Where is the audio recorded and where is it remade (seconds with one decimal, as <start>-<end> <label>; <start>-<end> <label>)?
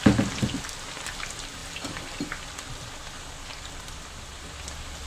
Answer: 0.0-5.1 recorded